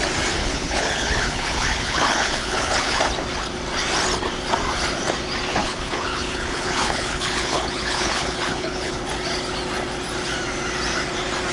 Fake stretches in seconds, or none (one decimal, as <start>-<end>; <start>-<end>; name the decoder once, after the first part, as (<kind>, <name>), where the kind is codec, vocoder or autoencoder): 0.4-3.0 (codec, HILCodec); 5.5-9.0